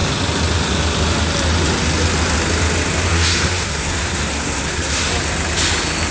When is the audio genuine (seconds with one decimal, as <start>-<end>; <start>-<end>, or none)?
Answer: 0.0-3.1; 5.1-6.1